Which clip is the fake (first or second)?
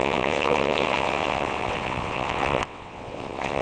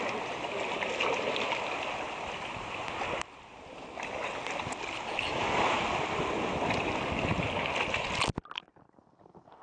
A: first